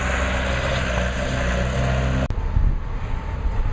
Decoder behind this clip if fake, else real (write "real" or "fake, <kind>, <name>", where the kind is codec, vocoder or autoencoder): real